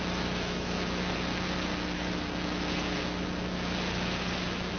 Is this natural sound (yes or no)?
no